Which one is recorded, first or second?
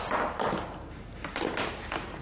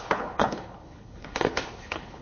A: first